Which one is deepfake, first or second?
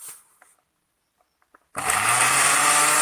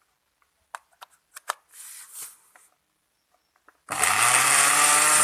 first